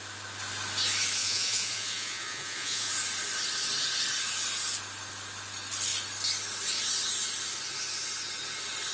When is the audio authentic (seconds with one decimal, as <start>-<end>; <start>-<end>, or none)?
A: 0.0-1.2; 2.9-8.9